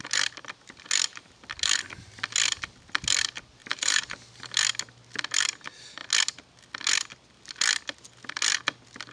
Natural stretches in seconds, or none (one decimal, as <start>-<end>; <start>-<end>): 0.0-3.6; 4.4-9.1